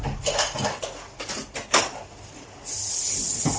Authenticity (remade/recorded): recorded